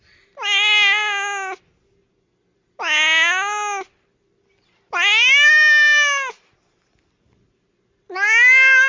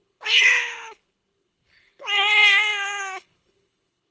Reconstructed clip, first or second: second